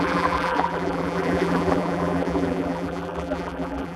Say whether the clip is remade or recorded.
remade